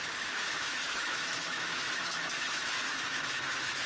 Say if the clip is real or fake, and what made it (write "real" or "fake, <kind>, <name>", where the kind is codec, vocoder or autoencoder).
fake, autoencoder, DAC-VAE